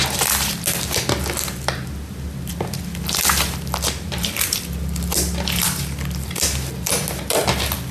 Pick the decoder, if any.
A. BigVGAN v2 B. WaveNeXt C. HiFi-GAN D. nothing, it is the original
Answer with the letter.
D